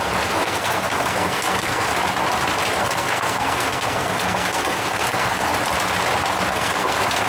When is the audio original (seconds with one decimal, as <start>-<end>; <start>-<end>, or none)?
1.9-2.8; 5.5-6.5